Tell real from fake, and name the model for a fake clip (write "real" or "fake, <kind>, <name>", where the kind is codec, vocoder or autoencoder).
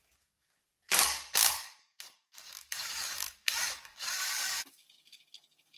fake, codec, DAC